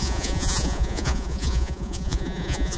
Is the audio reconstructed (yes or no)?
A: yes